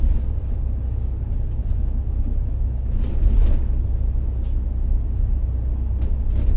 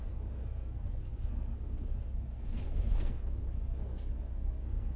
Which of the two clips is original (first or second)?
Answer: first